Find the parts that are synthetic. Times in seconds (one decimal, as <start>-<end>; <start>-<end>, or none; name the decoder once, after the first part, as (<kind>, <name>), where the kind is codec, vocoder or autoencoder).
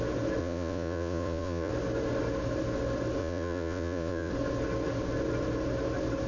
0.4-1.7 (vocoder, Vocos); 3.2-4.3